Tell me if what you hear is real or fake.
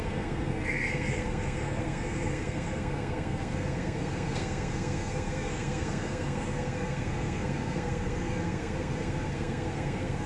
fake